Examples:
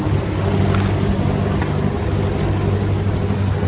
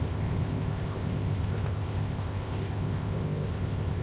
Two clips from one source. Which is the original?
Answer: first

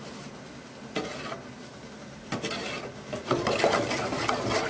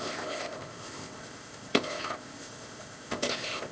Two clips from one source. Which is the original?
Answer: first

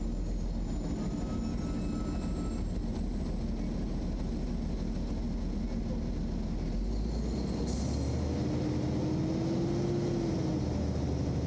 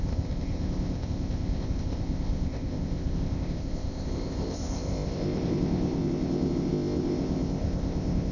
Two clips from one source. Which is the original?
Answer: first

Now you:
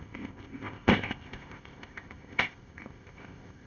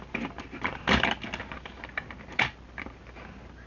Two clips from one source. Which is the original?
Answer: second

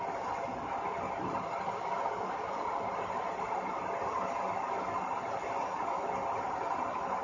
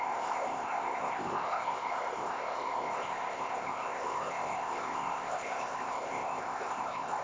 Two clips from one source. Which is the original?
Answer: first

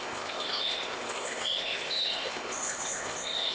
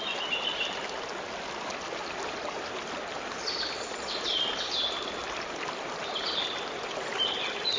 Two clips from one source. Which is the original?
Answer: second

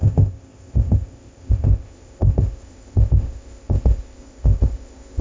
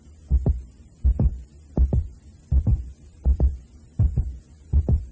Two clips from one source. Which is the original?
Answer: second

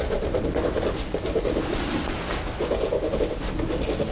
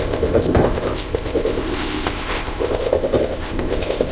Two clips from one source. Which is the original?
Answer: first